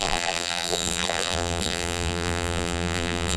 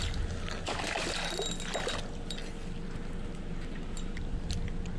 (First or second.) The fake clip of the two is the first